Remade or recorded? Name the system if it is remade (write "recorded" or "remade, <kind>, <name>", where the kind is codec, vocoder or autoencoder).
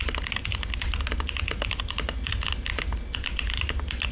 recorded